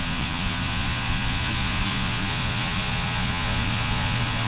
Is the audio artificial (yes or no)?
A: yes